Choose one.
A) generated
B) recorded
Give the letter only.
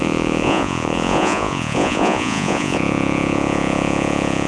A